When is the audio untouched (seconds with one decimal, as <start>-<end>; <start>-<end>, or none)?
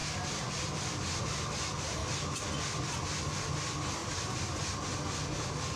1.2-5.8